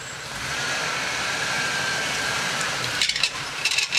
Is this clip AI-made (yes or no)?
yes